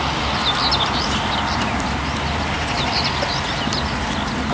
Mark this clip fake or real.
real